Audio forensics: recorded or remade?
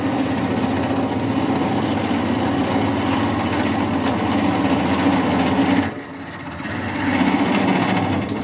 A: recorded